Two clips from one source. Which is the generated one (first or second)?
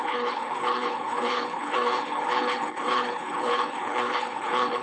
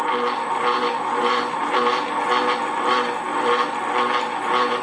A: first